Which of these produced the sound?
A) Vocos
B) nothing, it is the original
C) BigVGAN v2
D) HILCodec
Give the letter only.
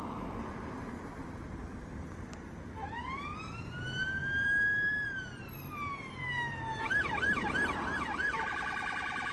C